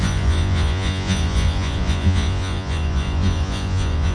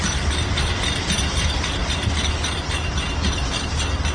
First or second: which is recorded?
second